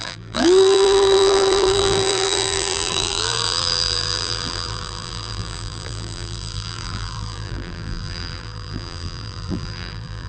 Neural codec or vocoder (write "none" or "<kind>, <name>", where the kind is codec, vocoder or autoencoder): vocoder, BigVGAN v2